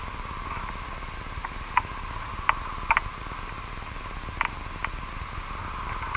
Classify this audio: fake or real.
real